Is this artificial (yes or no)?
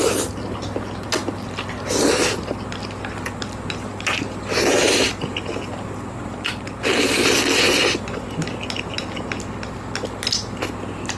no